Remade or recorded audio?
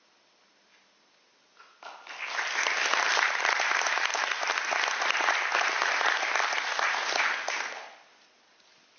recorded